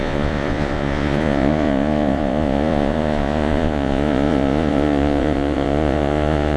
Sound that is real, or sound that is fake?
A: fake